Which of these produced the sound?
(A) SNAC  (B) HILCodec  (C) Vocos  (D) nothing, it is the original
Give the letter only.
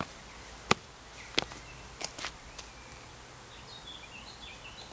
D